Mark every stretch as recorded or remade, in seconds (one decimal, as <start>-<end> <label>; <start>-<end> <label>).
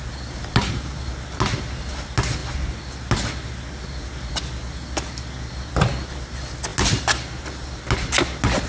0.0-8.7 recorded